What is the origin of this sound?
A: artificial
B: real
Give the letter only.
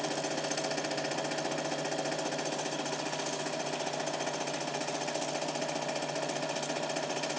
B